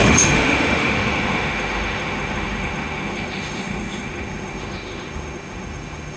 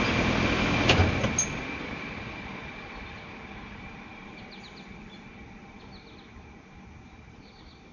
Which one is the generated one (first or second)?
first